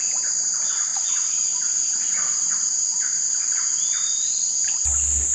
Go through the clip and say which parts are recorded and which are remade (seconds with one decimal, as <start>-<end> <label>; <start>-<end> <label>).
0.0-5.3 recorded